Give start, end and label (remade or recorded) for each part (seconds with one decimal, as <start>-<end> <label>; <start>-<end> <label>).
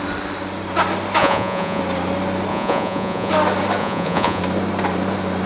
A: 0.0-1.2 recorded; 1.2-1.8 remade; 1.8-2.5 recorded; 2.5-3.3 remade; 3.3-3.8 recorded; 3.8-4.4 remade; 4.4-5.5 recorded